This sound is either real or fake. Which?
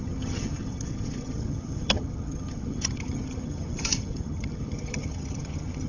fake